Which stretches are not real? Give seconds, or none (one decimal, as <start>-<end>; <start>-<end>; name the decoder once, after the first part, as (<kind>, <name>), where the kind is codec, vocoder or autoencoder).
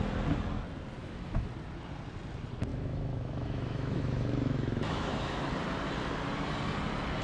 1.0-1.5 (autoencoder, DAC-VAE); 2.7-5.5